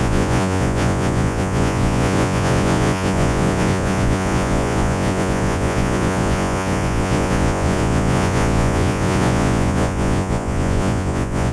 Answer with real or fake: fake